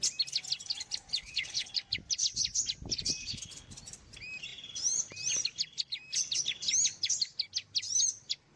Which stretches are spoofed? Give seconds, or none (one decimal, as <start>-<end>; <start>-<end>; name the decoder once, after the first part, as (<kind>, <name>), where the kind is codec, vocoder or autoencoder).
1.2-1.7 (codec, HILCodec); 3.2-3.7